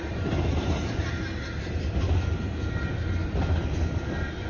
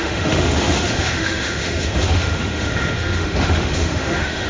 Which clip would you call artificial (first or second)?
second